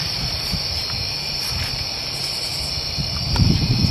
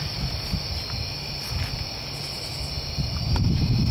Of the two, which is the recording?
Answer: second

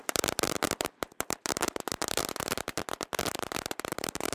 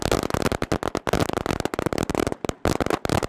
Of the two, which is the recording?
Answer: second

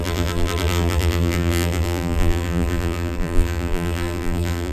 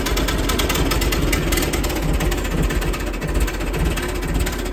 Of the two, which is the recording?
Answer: second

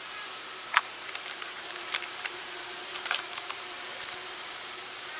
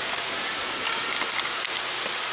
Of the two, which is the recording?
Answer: second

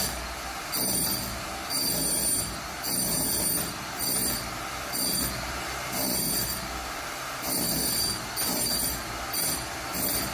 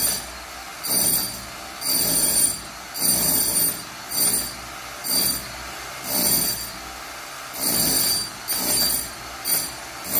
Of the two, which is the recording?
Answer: second